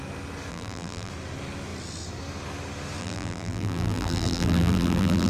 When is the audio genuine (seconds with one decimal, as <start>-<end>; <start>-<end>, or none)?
0.0-0.5; 1.1-3.0